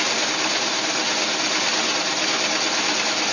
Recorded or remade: recorded